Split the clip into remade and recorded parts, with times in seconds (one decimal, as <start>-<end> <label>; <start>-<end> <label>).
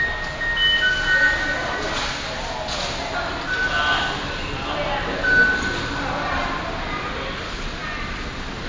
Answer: 0.0-8.7 recorded